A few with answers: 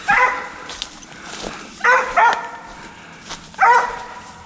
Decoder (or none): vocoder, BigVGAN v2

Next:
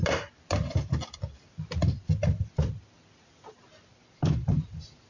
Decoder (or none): none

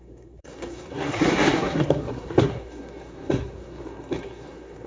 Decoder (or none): codec, SNAC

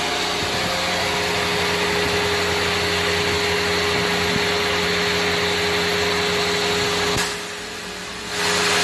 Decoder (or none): none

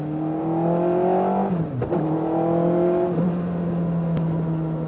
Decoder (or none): none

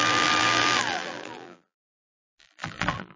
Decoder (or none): vocoder, BigVGAN v2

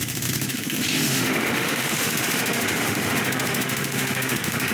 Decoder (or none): autoencoder, DAC-VAE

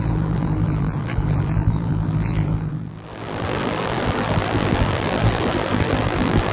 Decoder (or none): vocoder, BigVGAN v2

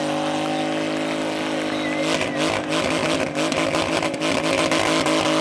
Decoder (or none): none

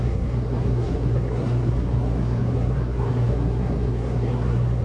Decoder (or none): codec, SNAC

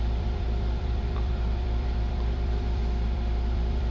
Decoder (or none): vocoder, BigVGAN v2